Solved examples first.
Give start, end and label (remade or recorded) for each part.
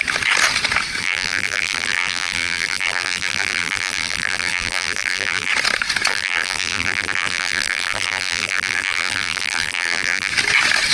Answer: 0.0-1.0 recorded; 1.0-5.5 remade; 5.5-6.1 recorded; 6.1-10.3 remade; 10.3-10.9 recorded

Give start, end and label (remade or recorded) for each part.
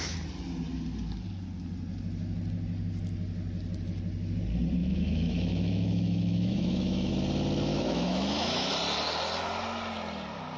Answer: 0.0-4.8 recorded; 4.8-7.1 remade; 7.1-7.7 recorded; 7.7-8.7 remade; 8.7-10.6 recorded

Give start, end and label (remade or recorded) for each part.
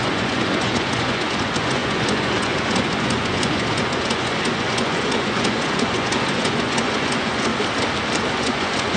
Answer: 0.0-7.5 remade; 7.5-8.3 recorded; 8.3-9.0 remade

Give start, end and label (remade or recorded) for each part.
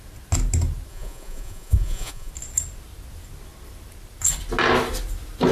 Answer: 0.0-0.9 recorded; 0.9-2.3 remade; 2.3-5.5 recorded